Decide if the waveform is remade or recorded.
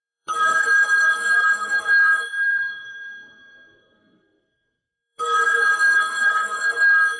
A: remade